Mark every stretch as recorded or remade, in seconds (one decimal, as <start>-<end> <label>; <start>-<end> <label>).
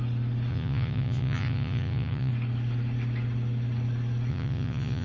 0.0-0.5 recorded; 0.5-2.3 remade; 2.3-4.3 recorded; 4.3-5.0 remade